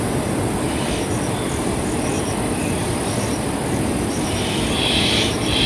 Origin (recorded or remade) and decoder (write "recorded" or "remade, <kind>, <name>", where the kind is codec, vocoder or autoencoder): remade, vocoder, BigVGAN v2